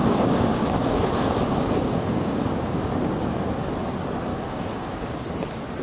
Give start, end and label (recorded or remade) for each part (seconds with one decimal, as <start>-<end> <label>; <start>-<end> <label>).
0.0-3.5 remade; 3.5-4.3 recorded; 4.3-5.2 remade; 5.2-5.8 recorded